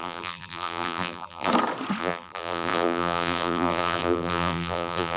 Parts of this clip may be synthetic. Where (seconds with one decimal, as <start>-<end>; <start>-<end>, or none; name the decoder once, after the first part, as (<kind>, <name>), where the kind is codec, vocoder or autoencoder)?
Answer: 0.0-1.5 (vocoder, BigVGAN v2); 2.0-5.2